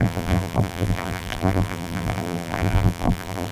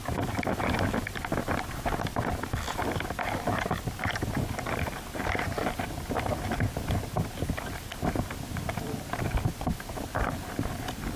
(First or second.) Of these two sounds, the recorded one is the second